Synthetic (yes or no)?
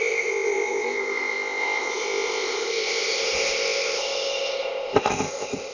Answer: yes